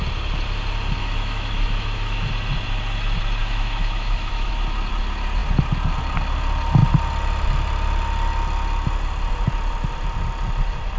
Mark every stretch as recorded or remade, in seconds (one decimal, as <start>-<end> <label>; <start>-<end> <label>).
0.0-1.0 recorded; 1.0-2.3 remade; 2.3-3.4 recorded; 3.4-4.5 remade; 4.5-11.0 recorded